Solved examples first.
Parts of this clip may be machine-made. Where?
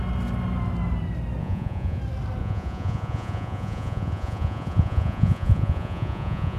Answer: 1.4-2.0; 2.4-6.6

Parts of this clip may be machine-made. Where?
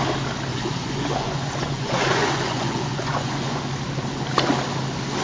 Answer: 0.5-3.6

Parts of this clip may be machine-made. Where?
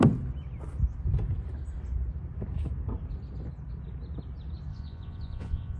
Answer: 4.7-5.8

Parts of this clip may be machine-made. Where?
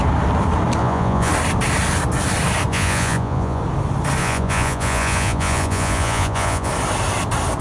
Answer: 0.8-1.3; 2.7-3.6; 4.2-6.7